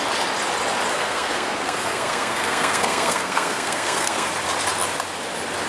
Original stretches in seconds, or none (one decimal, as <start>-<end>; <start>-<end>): 0.0-0.9; 4.3-5.7